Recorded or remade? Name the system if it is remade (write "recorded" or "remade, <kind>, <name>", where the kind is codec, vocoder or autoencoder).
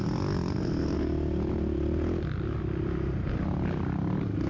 recorded